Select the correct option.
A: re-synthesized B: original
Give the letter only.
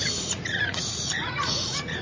A